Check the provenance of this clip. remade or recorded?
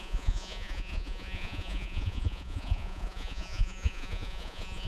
remade